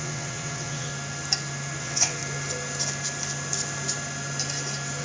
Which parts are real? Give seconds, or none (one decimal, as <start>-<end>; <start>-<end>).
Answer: 0.9-1.8; 2.2-5.0